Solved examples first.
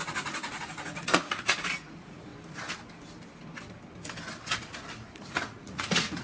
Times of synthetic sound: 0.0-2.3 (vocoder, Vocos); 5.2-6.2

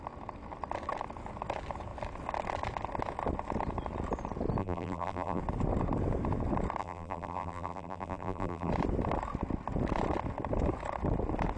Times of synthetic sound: 4.6-5.4 (vocoder, BigVGAN v2); 6.8-8.7

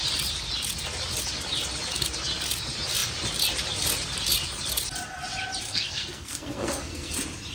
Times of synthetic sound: 5.7-7.1 (codec, SNAC)

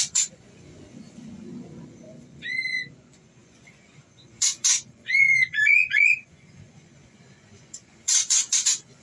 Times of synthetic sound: 0.0-9.0 (vocoder, Vocos)

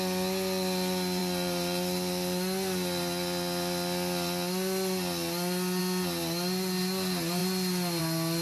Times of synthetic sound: none